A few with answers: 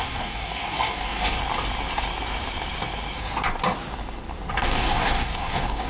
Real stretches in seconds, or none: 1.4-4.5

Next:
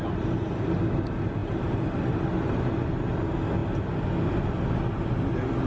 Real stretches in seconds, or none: 0.0-5.7

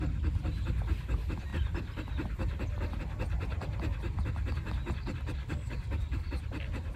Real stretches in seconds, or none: 0.0-5.4; 6.3-7.0

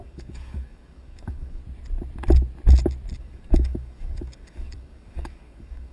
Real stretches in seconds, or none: 1.6-3.2

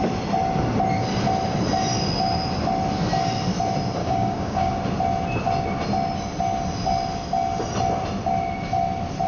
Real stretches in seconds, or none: 0.0-4.0; 4.7-9.3

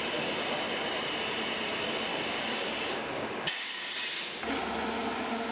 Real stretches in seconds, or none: 0.0-2.1; 3.9-5.5

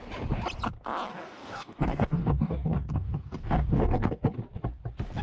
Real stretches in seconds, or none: 0.0-1.1; 4.2-5.2